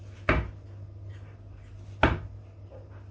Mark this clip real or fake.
real